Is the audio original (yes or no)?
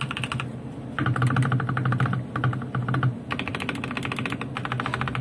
yes